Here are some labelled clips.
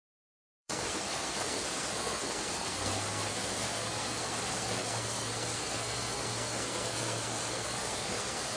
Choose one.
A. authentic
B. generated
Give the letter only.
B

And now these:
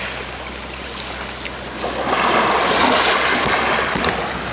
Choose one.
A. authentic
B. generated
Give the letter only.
A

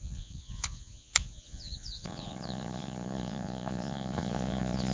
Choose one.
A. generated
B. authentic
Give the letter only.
A